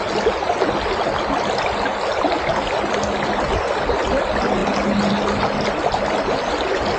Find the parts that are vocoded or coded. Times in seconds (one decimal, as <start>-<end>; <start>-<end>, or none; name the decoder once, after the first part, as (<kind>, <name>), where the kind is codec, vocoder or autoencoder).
none